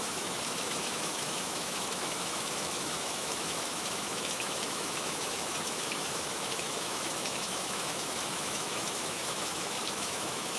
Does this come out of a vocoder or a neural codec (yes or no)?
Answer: yes